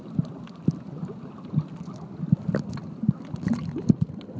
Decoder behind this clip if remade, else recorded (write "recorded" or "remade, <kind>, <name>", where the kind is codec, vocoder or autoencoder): recorded